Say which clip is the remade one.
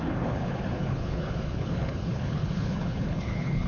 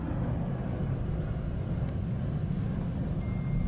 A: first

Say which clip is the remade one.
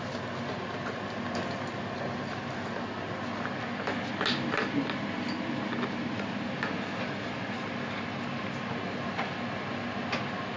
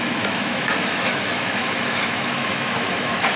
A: second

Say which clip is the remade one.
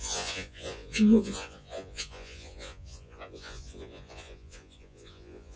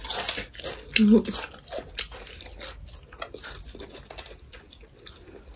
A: first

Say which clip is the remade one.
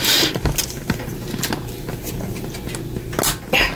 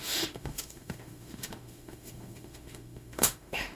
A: second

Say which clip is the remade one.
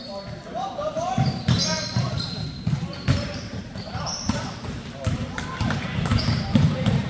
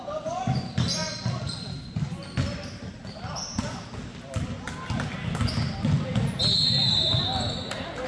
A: first